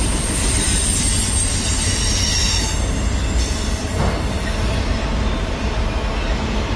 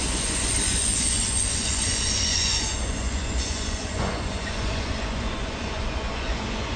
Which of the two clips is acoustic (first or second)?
first